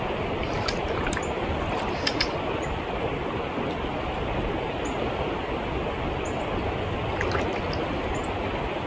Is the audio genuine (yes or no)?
yes